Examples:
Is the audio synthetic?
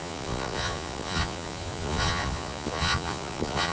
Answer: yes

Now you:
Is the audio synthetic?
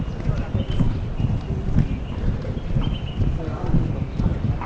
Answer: no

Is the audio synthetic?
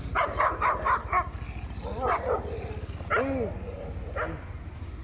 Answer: no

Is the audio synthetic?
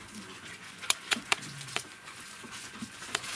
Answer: yes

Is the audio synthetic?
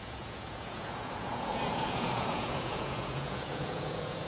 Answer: yes